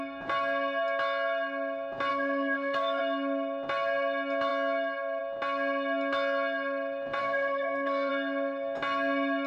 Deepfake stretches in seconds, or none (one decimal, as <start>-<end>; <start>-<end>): 2.1-3.0; 7.2-8.1